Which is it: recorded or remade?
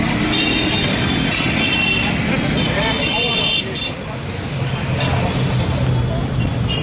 recorded